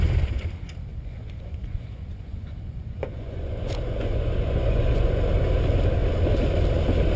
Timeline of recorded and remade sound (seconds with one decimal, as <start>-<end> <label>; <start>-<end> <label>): 0.0-0.9 recorded; 0.9-5.2 remade; 5.2-7.2 recorded